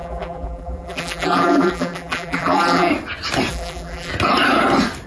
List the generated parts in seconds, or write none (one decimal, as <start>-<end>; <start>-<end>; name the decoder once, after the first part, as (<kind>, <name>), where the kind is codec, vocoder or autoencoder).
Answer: 0.0-2.9 (vocoder, BigVGAN v2); 3.5-4.1